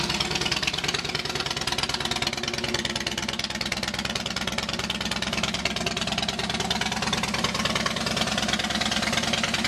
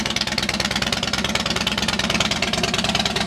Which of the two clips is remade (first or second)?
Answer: second